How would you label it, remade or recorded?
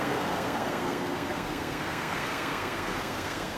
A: remade